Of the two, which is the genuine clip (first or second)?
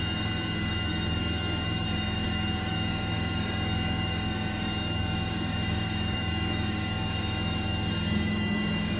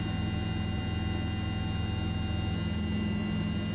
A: second